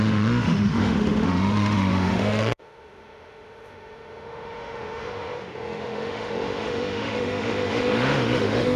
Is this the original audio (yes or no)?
no